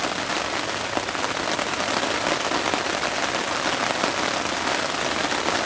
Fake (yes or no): no